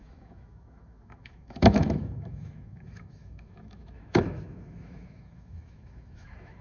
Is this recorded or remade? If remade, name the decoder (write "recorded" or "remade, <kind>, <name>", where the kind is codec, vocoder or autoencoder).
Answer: remade, autoencoder, DAC-VAE